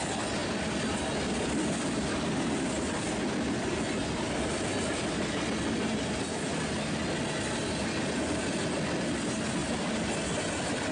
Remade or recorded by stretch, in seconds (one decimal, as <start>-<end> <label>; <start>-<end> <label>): 0.0-10.9 recorded